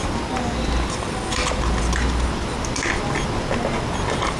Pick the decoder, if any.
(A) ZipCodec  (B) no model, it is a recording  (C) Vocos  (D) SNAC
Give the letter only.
B